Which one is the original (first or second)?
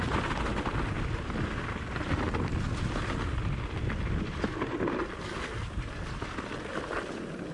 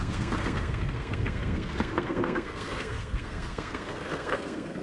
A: first